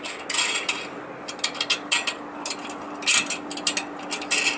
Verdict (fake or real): real